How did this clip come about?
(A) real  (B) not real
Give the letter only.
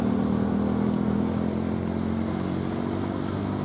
A